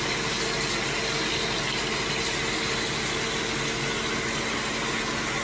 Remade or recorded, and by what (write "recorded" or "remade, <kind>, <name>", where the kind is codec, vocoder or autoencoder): recorded